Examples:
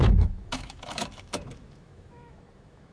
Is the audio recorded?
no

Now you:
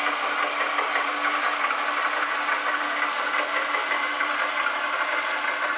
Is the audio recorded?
yes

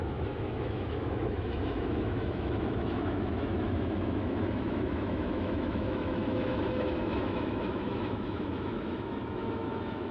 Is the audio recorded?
no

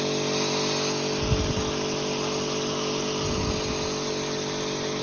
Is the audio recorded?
yes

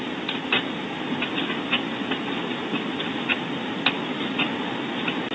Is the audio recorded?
yes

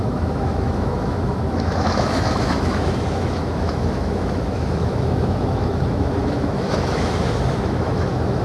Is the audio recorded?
no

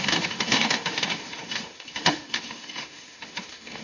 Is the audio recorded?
no